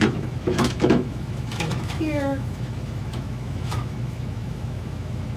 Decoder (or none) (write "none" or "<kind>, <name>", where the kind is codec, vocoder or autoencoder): autoencoder, DAC-VAE